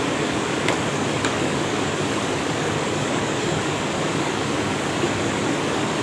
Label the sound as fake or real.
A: fake